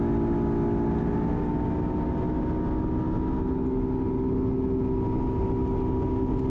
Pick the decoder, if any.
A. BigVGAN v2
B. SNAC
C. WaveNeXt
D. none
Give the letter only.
D